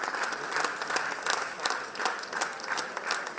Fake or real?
real